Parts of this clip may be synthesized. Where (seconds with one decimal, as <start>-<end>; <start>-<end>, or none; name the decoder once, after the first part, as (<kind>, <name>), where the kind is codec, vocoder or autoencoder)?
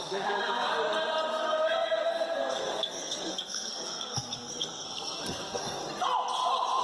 0.0-0.7 (codec, SNAC); 1.3-5.8